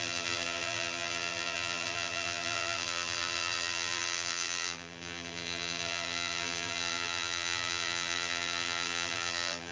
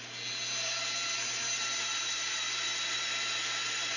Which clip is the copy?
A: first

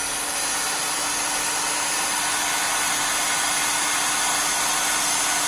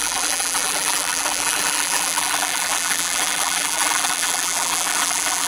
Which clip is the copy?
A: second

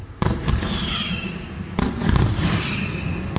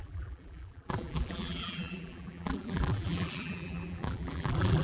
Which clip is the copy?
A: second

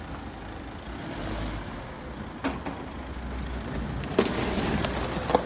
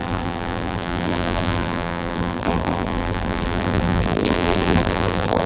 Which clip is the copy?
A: second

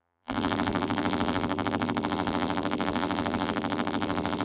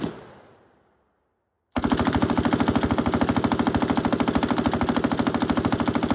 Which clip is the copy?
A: first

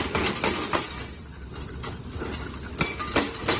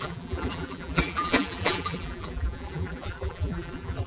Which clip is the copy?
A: second